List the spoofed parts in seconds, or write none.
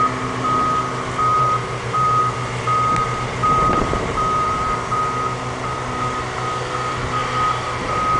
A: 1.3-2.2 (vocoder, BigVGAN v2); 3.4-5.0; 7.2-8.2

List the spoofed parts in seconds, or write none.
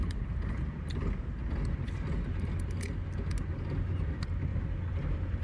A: 0.0-1.5 (vocoder, BigVGAN v2); 4.5-5.4